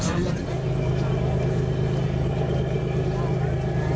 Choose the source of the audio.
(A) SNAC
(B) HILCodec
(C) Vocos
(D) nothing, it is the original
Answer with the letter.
D